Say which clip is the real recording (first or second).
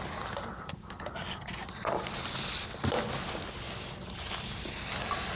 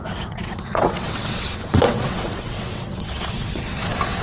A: first